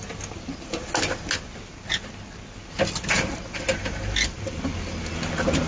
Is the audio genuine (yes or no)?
yes